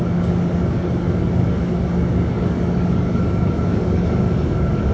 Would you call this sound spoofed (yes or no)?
yes